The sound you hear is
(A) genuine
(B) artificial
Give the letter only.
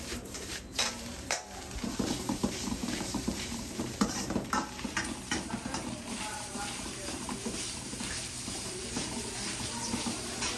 B